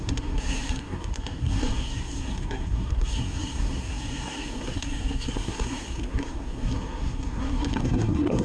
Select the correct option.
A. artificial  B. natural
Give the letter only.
A